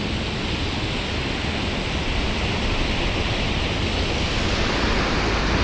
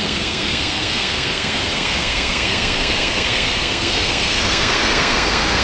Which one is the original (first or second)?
first